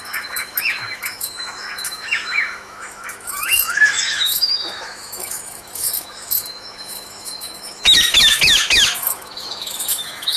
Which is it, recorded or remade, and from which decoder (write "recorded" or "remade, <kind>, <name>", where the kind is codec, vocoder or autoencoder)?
remade, autoencoder, DAC-VAE